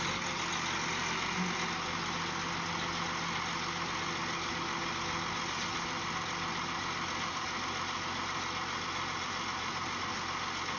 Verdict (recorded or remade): recorded